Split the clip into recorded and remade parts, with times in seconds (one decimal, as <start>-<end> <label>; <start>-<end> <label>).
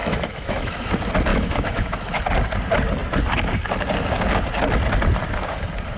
0.0-0.9 remade; 0.9-1.3 recorded; 1.3-2.2 remade; 2.2-6.0 recorded